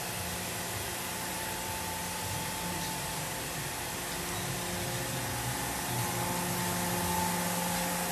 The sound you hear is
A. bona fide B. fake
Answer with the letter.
A